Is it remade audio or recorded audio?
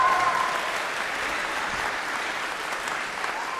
remade